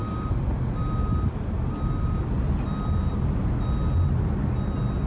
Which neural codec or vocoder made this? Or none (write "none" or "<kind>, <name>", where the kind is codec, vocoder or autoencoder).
none